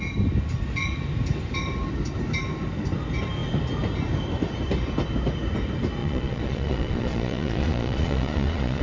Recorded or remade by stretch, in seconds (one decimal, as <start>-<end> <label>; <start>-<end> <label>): 0.0-6.0 recorded; 6.0-8.8 remade